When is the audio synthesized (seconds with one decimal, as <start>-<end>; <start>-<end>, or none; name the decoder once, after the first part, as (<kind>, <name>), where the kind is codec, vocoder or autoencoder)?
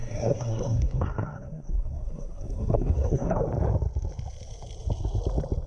0.0-3.4 (codec, SNAC)